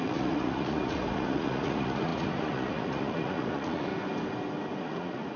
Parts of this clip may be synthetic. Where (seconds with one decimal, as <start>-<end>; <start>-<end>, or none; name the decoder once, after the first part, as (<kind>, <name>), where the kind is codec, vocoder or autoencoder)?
0.0-3.9 (vocoder, Vocos); 4.8-5.4